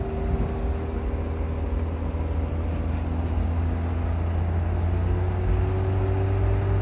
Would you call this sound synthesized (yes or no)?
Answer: no